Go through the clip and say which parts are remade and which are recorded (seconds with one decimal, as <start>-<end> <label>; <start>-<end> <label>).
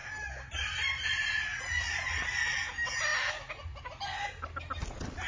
0.0-5.3 recorded